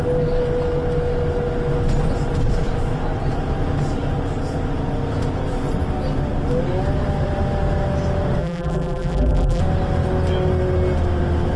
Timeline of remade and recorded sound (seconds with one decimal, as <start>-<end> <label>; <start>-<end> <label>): 0.0-8.4 recorded; 8.4-9.6 remade; 9.6-11.6 recorded